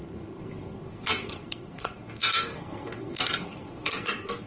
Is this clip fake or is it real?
fake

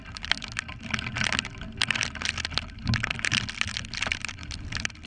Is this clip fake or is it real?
real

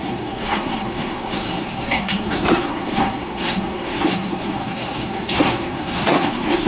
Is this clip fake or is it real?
fake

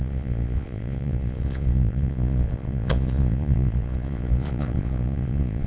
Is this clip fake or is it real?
fake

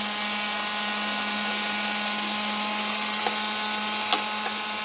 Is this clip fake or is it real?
real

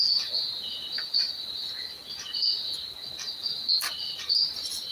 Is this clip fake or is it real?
real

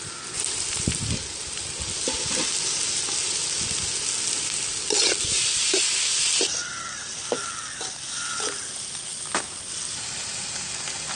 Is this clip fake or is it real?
real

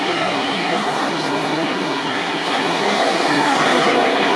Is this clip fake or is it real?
fake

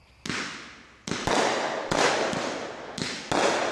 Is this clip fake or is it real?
real